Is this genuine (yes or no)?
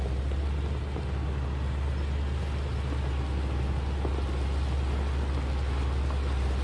yes